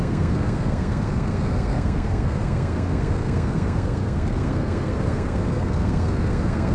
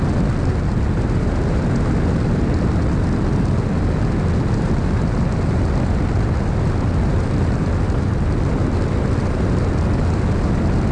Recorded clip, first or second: second